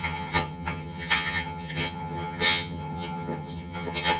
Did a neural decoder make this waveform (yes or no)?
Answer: yes